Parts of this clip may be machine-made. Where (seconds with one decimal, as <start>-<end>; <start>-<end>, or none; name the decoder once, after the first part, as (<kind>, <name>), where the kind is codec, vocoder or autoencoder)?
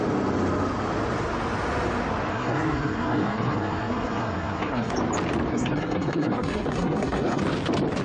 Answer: 2.3-4.9 (codec, SNAC); 5.5-7.4